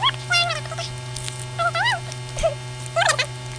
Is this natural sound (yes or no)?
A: yes